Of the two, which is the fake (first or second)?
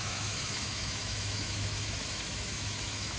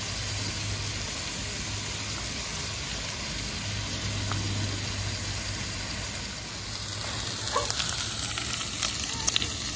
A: first